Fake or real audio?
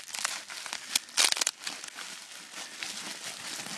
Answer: real